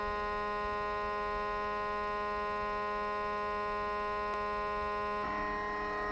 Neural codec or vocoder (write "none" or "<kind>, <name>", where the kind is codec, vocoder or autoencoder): none